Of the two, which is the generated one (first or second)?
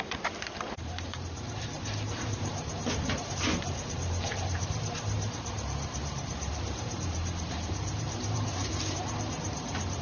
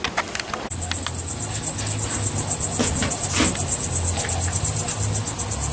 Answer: first